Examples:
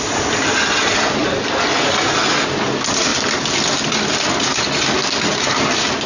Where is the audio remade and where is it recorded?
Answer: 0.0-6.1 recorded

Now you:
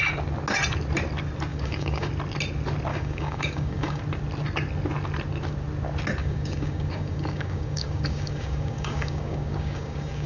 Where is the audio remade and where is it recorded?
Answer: 0.0-1.5 recorded; 1.5-2.1 remade; 2.1-2.9 recorded; 2.9-4.0 remade; 4.0-6.2 recorded; 6.2-10.3 remade

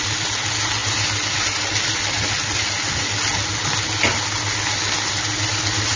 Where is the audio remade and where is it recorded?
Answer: 0.0-6.0 recorded

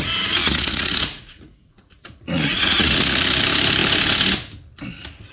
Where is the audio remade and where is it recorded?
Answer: 0.0-0.4 recorded; 0.4-3.4 remade; 3.4-5.3 recorded

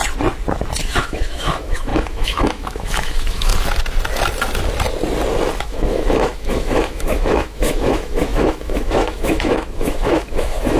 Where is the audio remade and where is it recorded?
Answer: 0.0-0.8 recorded; 0.8-3.5 remade; 3.5-5.6 recorded; 5.6-10.8 remade

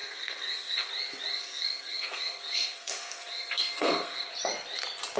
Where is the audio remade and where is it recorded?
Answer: 0.0-0.9 remade; 0.9-1.3 recorded; 1.3-4.3 remade; 4.3-5.2 recorded

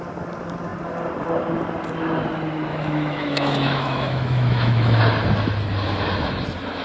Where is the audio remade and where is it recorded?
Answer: 0.0-2.7 recorded; 2.7-5.0 remade; 5.0-6.8 recorded